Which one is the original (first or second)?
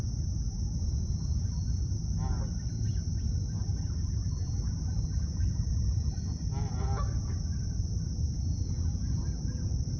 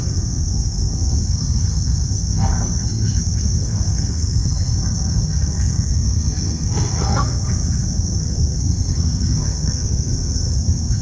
first